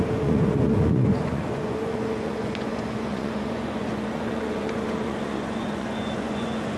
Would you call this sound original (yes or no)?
no